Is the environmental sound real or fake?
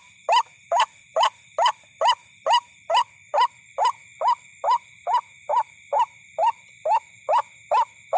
real